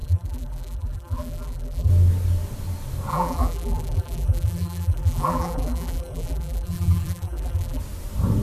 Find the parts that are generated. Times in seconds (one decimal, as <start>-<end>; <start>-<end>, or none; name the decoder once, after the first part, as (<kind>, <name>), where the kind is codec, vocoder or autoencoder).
0.0-1.9 (vocoder, BigVGAN v2); 3.1-7.8